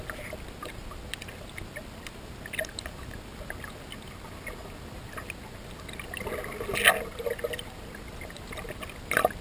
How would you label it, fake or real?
real